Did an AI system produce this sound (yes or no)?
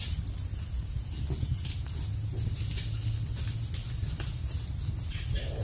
no